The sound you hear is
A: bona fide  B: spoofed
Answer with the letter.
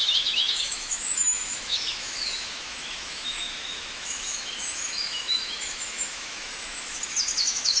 B